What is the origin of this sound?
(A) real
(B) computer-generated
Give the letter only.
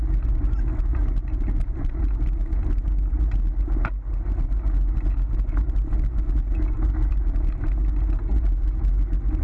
A